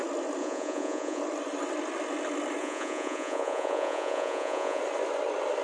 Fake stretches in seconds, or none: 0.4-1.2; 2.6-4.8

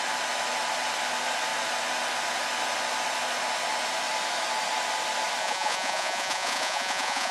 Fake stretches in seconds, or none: 5.4-7.3

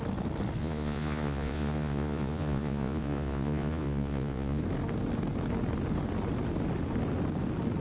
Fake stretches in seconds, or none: 0.6-4.6